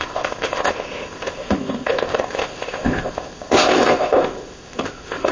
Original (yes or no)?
no